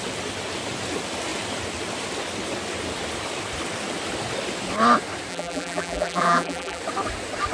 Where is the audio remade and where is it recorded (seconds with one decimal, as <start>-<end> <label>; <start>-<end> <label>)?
0.0-5.3 recorded; 5.3-6.8 remade; 6.8-7.5 recorded